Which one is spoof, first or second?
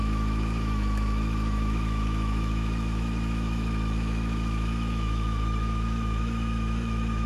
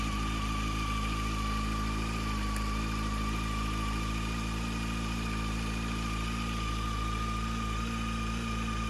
first